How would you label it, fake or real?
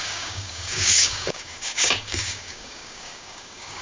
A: fake